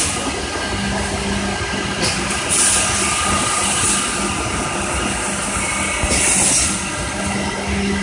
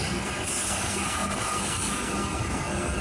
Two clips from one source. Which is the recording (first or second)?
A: first